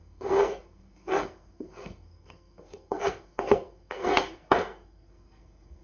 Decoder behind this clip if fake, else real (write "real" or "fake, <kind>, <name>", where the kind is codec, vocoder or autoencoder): fake, codec, SNAC